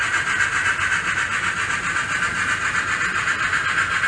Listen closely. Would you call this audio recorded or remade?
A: recorded